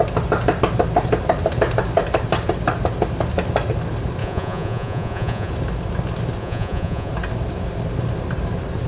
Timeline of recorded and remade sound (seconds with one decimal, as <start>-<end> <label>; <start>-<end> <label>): 0.0-4.2 recorded; 4.2-5.5 remade; 5.5-6.4 recorded; 6.4-7.1 remade; 7.1-8.9 recorded